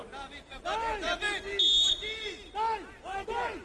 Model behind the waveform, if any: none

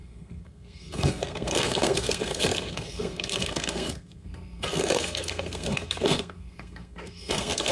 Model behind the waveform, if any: codec, SNAC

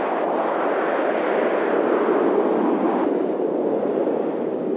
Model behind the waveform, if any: none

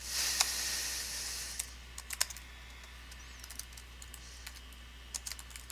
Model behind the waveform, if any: none